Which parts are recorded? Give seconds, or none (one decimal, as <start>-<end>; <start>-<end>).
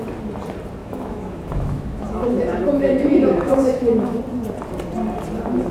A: 0.0-0.8; 4.2-5.7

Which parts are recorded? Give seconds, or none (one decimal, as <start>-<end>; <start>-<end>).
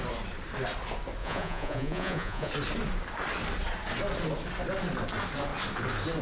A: 0.0-1.2; 2.5-6.2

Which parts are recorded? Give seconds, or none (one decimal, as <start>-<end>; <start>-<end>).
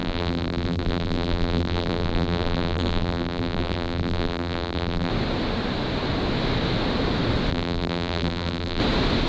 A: 5.1-7.5; 8.8-9.3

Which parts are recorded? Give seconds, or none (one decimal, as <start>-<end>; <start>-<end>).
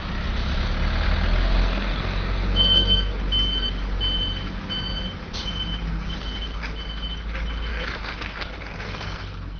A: 0.0-1.6; 3.2-5.9; 6.7-7.7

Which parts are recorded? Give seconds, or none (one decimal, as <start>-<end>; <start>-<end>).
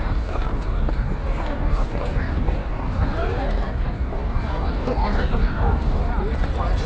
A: 6.1-6.9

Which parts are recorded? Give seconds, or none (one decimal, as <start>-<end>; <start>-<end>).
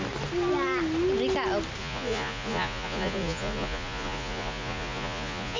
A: 0.0-1.8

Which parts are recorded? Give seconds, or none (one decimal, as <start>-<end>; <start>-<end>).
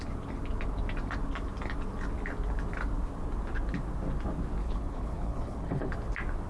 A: 0.0-4.6; 5.9-6.5